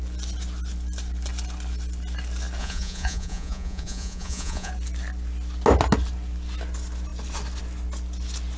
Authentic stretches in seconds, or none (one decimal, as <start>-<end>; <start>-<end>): 0.0-2.6; 4.7-8.6